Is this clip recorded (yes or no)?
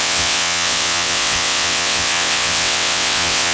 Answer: no